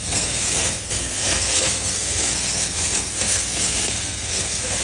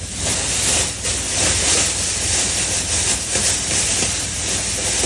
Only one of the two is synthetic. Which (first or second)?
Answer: first